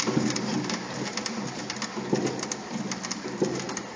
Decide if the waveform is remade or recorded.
recorded